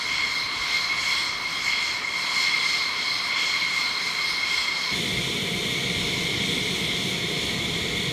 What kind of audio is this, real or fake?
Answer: real